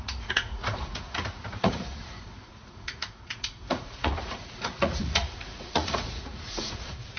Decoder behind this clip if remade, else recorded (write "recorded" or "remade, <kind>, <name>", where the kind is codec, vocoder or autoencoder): remade, vocoder, Vocos